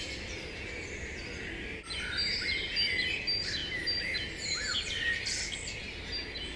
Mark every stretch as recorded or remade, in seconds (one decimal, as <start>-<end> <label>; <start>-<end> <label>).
0.0-6.6 recorded